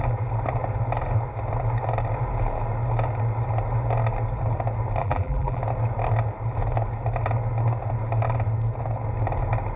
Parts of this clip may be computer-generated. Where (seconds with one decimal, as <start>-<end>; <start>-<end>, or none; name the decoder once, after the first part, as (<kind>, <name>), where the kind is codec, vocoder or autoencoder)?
5.0-5.6 (vocoder, BigVGAN v2)

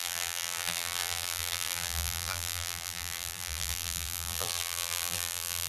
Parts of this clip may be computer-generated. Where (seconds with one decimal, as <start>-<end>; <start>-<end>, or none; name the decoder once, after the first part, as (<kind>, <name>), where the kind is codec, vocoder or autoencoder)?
0.0-5.7 (vocoder, BigVGAN v2)

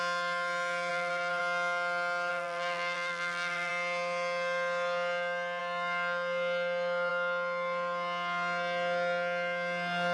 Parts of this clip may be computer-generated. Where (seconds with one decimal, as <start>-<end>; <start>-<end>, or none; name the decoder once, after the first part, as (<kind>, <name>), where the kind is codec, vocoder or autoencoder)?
0.9-1.4 (vocoder, BigVGAN v2); 2.3-3.7

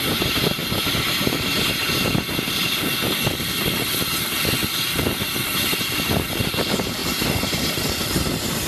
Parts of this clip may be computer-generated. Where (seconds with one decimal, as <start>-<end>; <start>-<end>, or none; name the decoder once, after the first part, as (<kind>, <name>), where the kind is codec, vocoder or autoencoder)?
0.0-2.9 (vocoder, BigVGAN v2); 5.8-8.7